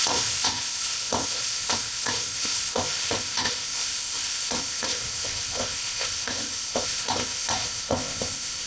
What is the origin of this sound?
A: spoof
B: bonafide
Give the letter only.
A